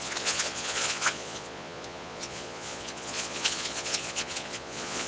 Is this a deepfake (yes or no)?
yes